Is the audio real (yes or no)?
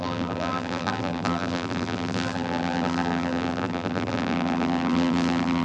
no